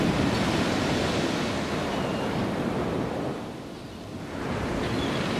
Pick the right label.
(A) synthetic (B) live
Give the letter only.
B